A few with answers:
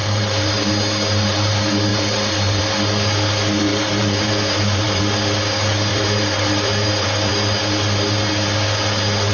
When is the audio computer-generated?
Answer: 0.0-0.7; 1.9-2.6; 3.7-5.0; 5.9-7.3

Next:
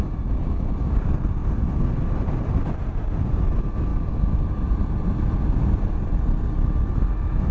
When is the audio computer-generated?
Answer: none

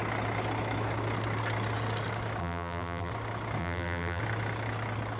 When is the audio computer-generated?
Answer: 2.4-3.1; 3.6-4.2

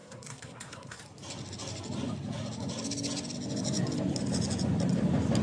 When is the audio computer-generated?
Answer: 0.0-1.0

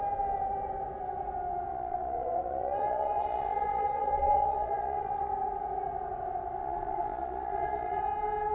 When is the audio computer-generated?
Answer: 1.7-5.3; 6.6-8.0